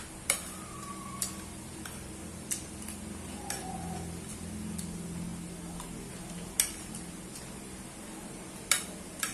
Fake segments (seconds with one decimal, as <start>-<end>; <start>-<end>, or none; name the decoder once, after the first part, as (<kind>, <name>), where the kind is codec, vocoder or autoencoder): none